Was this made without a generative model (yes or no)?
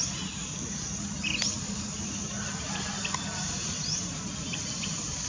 no